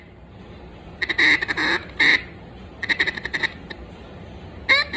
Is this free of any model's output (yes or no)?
yes